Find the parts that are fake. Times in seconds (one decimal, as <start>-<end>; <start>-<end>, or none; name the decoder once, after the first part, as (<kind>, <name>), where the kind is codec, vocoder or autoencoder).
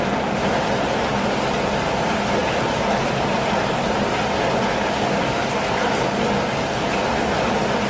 none